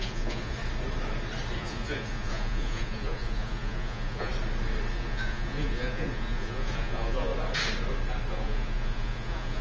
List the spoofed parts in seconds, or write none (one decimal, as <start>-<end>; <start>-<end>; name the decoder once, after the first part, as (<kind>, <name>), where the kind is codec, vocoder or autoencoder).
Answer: 0.0-0.6 (vocoder, Vocos); 1.6-4.3; 4.9-7.3; 8.3-9.6